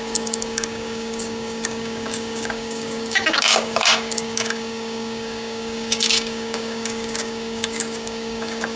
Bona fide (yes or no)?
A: no